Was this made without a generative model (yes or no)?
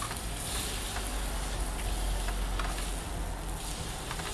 yes